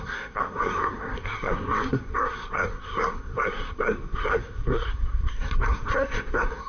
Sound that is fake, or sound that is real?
fake